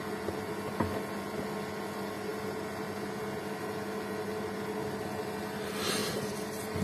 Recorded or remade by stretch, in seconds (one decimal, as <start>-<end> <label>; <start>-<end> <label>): 0.0-6.0 recorded; 6.0-6.8 remade